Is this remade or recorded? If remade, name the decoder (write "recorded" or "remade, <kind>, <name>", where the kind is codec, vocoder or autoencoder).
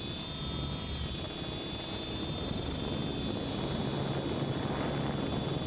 recorded